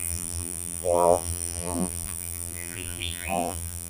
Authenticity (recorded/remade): remade